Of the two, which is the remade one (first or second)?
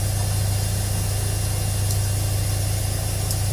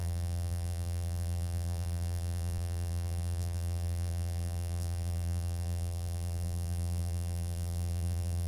second